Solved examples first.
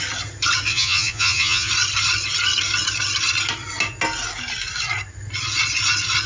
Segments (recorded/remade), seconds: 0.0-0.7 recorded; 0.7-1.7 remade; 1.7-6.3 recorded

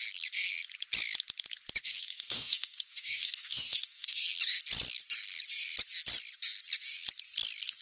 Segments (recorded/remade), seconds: 0.0-1.8 recorded; 1.8-4.2 remade; 4.2-7.8 recorded